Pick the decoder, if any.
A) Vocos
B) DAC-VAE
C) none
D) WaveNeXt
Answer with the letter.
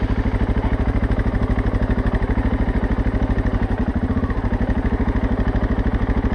C